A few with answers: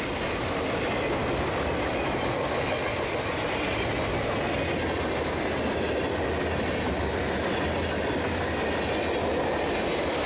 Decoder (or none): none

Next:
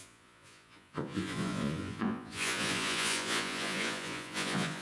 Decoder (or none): vocoder, Vocos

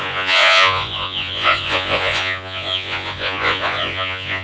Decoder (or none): vocoder, Vocos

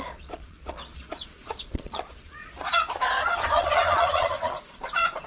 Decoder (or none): vocoder, Vocos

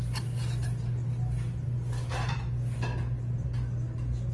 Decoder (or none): none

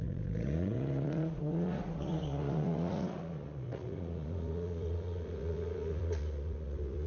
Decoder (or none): vocoder, Vocos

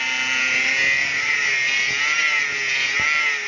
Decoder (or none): none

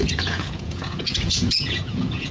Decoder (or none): vocoder, Vocos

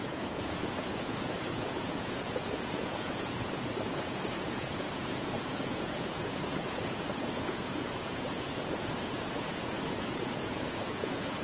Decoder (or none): vocoder, Vocos